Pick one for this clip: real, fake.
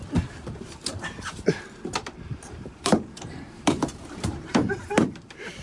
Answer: fake